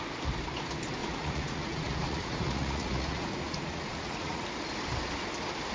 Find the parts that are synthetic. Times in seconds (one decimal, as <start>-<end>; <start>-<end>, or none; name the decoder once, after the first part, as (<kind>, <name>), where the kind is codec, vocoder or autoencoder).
1.0-4.4 (vocoder, Vocos)